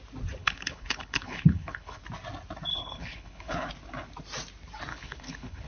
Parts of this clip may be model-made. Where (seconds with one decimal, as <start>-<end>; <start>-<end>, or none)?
0.4-2.0; 2.7-3.7; 4.9-5.7